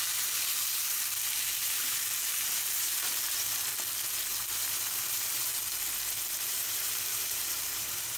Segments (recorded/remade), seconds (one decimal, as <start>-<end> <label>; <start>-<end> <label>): 0.0-3.7 remade; 3.7-4.5 recorded; 4.5-5.5 remade; 5.5-6.5 recorded; 6.5-8.2 remade